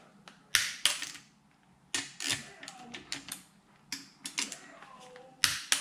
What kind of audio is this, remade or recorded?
recorded